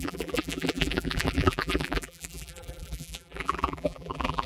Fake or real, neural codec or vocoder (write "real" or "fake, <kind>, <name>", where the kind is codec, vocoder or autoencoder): fake, vocoder, BigVGAN v2